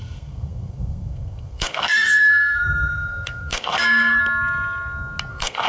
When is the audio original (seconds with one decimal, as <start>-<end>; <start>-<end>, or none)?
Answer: 4.2-5.3